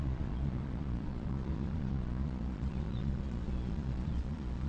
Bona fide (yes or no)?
no